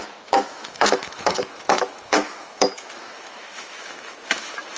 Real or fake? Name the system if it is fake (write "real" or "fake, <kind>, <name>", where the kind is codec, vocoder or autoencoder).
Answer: fake, autoencoder, DAC-VAE